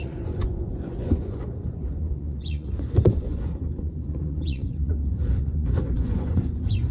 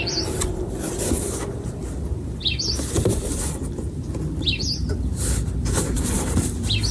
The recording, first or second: second